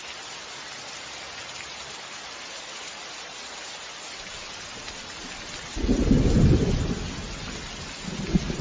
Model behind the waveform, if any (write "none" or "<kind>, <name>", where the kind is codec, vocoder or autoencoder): none